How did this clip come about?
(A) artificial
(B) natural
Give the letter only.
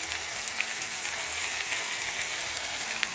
A